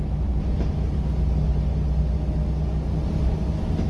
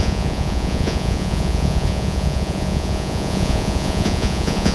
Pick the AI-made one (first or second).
second